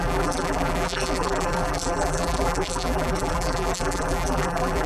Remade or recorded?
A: remade